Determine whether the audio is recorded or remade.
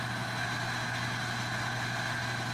recorded